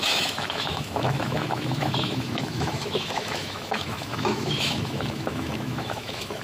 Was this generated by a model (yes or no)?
yes